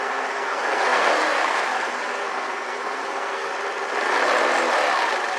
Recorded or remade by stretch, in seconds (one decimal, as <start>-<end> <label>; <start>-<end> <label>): 0.0-3.5 remade; 3.5-5.4 recorded